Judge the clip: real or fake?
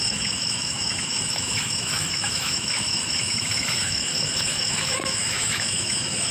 fake